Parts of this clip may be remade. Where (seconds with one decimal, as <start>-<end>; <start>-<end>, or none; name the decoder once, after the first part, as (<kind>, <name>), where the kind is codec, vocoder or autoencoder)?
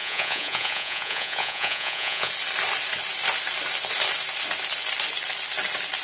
0.0-2.3 (vocoder, Vocos)